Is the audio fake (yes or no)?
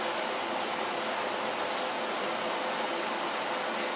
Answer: no